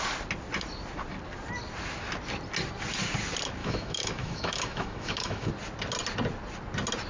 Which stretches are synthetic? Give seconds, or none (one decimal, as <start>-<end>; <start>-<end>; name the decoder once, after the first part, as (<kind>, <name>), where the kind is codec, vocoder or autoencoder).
3.6-5.5 (autoencoder, DAC-VAE)